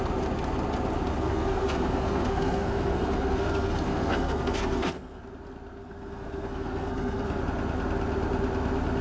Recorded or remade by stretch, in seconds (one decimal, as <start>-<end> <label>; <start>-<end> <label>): 0.0-1.1 recorded; 1.1-5.2 remade; 5.2-5.8 recorded; 5.8-7.4 remade; 7.4-9.0 recorded